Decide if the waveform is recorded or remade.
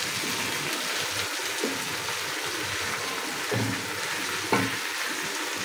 recorded